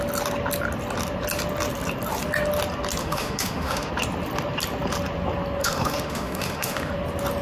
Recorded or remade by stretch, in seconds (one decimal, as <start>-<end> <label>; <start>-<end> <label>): 0.0-3.0 recorded; 3.0-3.9 remade; 3.9-5.6 recorded; 5.6-6.9 remade; 6.9-7.4 recorded